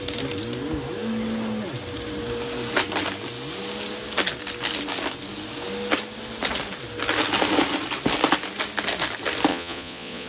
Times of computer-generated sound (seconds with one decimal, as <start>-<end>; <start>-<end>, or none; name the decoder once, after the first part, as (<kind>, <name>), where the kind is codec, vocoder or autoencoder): 9.5-10.3 (vocoder, Vocos)

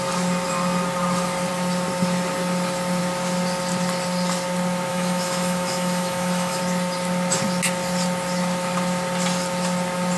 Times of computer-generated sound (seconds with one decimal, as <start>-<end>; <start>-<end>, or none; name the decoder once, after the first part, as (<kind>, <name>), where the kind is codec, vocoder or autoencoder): 4.9-6.6 (autoencoder, DAC-VAE)

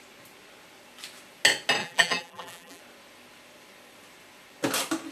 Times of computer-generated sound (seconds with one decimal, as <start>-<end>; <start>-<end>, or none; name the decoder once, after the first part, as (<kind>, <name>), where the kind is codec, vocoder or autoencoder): 1.8-2.8 (vocoder, BigVGAN v2)

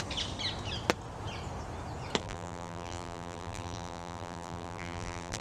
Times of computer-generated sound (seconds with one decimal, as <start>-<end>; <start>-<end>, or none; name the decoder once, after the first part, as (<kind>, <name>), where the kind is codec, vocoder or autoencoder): 2.2-5.4 (vocoder, BigVGAN v2)

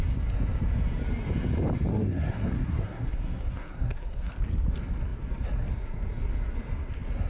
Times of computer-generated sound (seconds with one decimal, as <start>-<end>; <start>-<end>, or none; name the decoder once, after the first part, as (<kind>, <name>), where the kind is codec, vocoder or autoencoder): 1.9-4.4 (codec, SNAC)